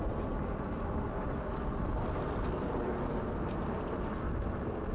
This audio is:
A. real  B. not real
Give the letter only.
A